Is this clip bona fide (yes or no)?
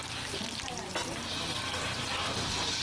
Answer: yes